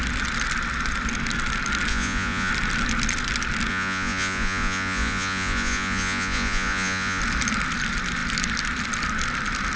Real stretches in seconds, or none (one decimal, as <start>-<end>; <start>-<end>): 0.0-1.9; 2.5-3.7; 7.2-9.8